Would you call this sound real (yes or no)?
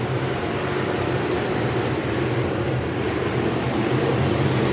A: no